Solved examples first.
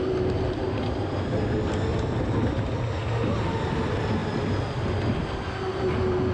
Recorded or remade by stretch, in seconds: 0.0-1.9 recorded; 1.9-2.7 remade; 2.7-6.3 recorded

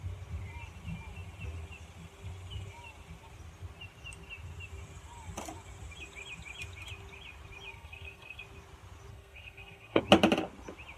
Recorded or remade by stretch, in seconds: 0.0-7.7 recorded; 7.7-8.4 remade; 8.4-9.1 recorded; 9.1-10.0 remade; 10.0-11.0 recorded

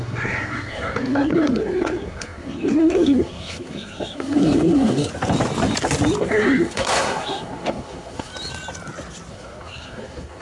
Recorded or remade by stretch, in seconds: 0.0-5.1 remade; 5.1-6.2 recorded; 6.2-8.3 remade; 8.3-9.3 recorded; 9.3-10.4 remade

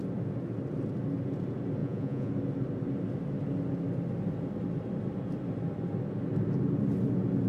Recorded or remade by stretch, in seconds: 0.0-1.8 recorded; 1.8-2.3 remade; 2.3-7.5 recorded

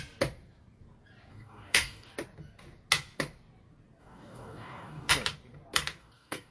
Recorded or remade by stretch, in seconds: 0.0-1.3 recorded; 1.3-2.1 remade; 2.1-4.0 recorded; 4.0-5.1 remade; 5.1-6.0 recorded; 6.0-6.5 remade

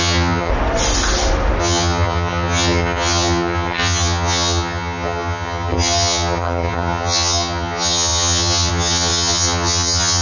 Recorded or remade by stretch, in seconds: 0.0-0.5 remade; 0.5-1.6 recorded; 1.6-10.2 remade

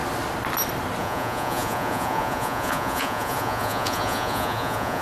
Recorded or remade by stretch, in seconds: 0.0-1.0 recorded; 1.0-5.0 remade

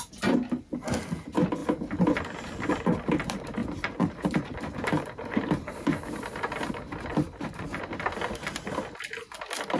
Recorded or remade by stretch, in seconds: 0.0-3.6 recorded; 3.6-6.4 remade; 6.4-7.1 recorded; 7.1-7.8 remade; 7.8-9.8 recorded